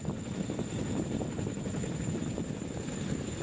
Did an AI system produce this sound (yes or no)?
no